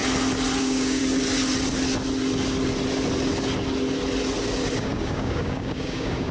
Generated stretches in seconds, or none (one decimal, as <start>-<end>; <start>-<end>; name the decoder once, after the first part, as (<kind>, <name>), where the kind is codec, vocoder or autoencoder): 0.6-1.0 (codec, DAC); 4.8-6.3